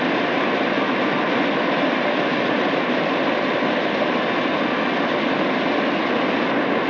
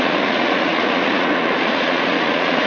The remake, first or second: second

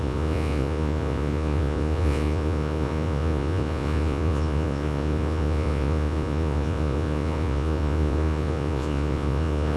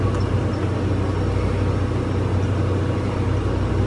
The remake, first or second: first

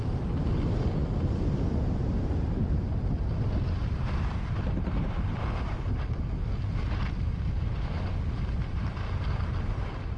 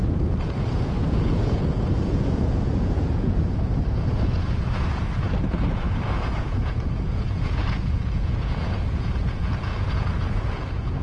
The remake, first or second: second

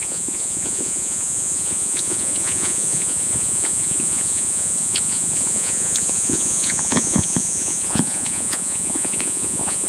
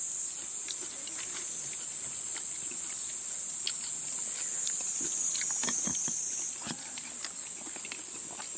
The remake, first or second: first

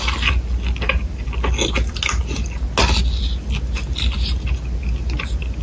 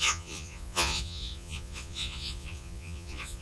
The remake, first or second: second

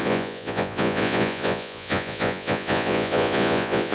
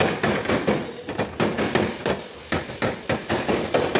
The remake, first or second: first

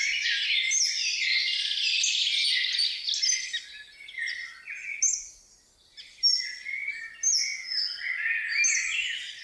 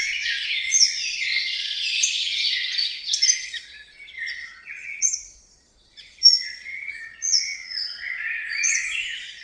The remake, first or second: second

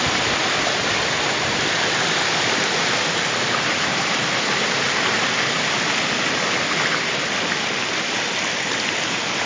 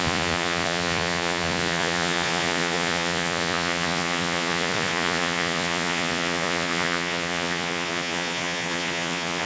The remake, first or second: second